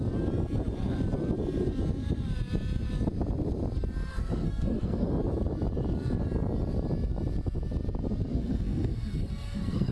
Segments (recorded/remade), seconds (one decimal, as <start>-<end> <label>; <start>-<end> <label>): 0.0-4.1 recorded; 4.1-5.1 remade; 5.1-8.3 recorded; 8.3-9.9 remade